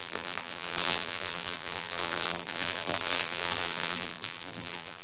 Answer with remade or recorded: remade